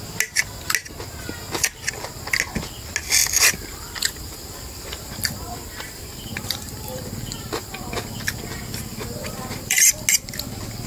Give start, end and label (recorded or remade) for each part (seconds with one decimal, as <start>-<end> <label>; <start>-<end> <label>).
0.0-3.2 recorded; 3.2-7.7 remade; 7.7-8.9 recorded; 8.9-9.9 remade; 9.9-10.9 recorded